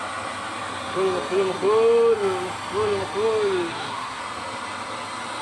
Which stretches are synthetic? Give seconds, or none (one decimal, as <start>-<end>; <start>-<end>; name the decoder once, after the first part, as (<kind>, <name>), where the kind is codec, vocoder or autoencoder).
3.7-4.2 (codec, SNAC)